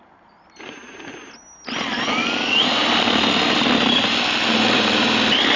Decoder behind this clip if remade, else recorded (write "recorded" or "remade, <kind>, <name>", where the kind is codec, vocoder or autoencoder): recorded